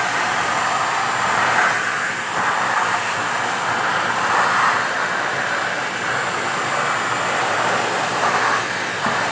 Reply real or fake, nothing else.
real